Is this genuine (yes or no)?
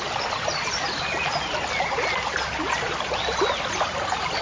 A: yes